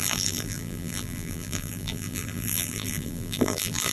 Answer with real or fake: fake